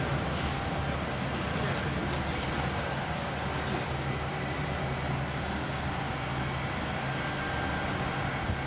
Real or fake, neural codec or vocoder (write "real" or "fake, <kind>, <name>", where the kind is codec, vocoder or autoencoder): real